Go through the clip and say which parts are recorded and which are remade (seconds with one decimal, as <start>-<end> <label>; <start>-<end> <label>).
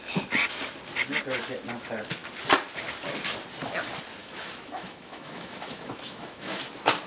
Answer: 0.0-4.2 recorded; 4.2-6.6 remade; 6.6-7.1 recorded